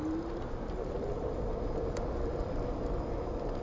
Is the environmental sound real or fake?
real